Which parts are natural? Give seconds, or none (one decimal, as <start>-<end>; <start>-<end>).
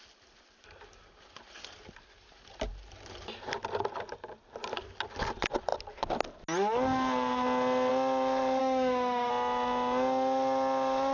0.0-8.6; 9.3-11.1